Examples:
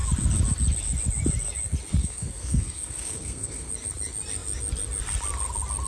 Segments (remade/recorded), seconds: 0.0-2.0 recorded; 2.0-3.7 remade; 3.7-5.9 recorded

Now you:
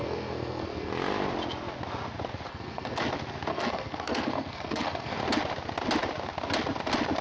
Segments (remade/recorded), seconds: 0.0-0.9 remade; 0.9-2.5 recorded; 2.5-3.0 remade; 3.0-3.5 recorded; 3.5-5.2 remade; 5.2-7.2 recorded

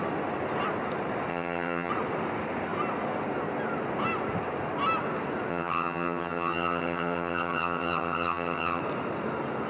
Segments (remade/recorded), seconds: 0.0-1.3 recorded; 1.3-1.9 remade; 1.9-5.5 recorded; 5.5-8.8 remade; 8.8-9.7 recorded

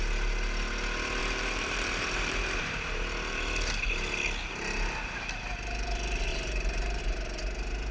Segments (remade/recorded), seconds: 0.0-1.2 recorded; 1.2-2.6 remade; 2.6-6.3 recorded; 6.3-7.0 remade; 7.0-7.9 recorded

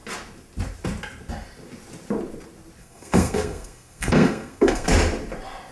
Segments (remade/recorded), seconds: 0.0-2.8 recorded; 2.8-4.9 remade; 4.9-5.7 recorded

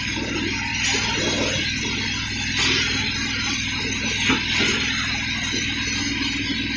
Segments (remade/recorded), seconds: 0.0-6.8 recorded

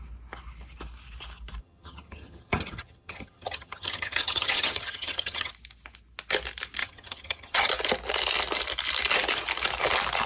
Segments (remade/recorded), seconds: 0.0-1.6 recorded; 1.6-5.5 remade; 5.5-6.8 recorded; 6.8-7.7 remade; 7.7-10.3 recorded